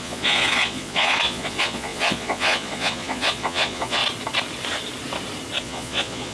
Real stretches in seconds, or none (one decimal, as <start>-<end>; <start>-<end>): 4.0-5.6